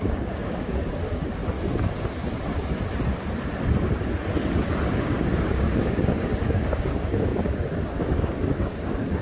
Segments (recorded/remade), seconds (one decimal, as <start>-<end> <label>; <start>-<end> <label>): 0.0-1.4 remade; 1.4-4.9 recorded; 4.9-9.2 remade